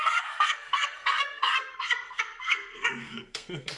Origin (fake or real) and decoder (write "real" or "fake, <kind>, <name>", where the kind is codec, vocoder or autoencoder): fake, codec, SNAC